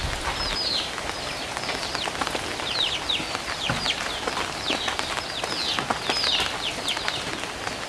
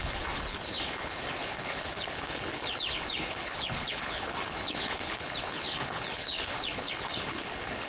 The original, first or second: first